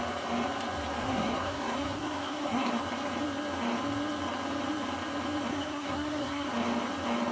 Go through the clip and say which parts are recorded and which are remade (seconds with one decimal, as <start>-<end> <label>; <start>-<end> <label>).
0.0-1.0 recorded; 1.0-2.7 remade; 2.7-5.5 recorded; 5.5-6.5 remade; 6.5-7.3 recorded

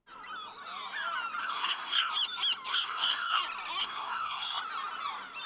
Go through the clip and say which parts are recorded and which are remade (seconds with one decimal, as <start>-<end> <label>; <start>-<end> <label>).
0.0-1.4 recorded; 1.4-2.1 remade; 2.1-2.7 recorded; 2.7-3.4 remade; 3.4-3.8 recorded; 3.8-4.6 remade; 4.6-5.5 recorded

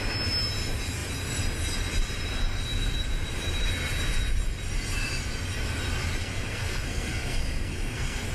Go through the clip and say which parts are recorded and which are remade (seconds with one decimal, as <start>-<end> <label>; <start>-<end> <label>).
0.0-6.2 recorded; 6.2-8.3 remade

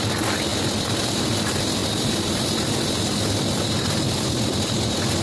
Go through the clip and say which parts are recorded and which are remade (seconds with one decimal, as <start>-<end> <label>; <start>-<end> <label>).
0.0-5.2 recorded

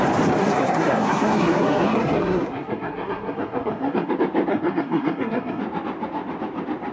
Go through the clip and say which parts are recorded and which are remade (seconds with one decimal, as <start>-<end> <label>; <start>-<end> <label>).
0.0-0.4 recorded; 0.4-4.1 remade; 4.1-4.5 recorded; 4.5-5.6 remade; 5.6-6.9 recorded